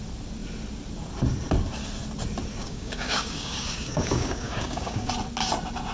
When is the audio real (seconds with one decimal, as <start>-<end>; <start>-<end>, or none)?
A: 0.0-2.6; 5.1-5.9